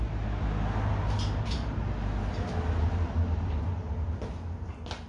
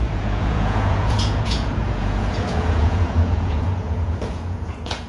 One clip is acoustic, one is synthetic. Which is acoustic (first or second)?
first